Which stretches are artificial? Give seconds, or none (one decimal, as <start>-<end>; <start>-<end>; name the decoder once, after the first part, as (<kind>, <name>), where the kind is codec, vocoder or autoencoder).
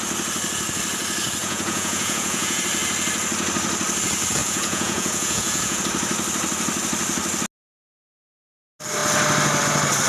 1.4-2.6 (vocoder, Vocos); 4.4-5.8